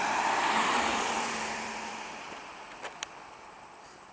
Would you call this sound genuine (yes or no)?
no